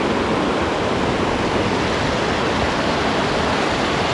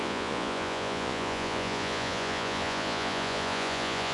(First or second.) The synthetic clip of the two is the second